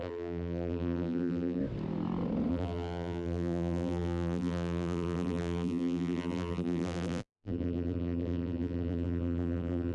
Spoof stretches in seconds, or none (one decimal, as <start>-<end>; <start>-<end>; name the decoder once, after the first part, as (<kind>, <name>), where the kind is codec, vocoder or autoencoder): 0.0-1.6 (vocoder, BigVGAN v2); 2.5-9.9